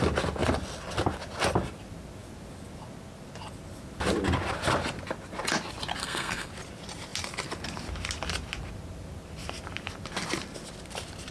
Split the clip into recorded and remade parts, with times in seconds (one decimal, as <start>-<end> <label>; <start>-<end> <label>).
0.0-6.0 recorded; 6.0-6.5 remade; 6.5-11.3 recorded